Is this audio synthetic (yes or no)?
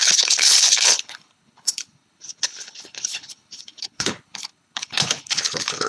yes